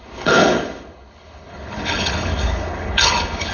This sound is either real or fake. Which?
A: fake